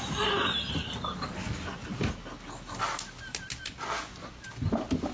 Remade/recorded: recorded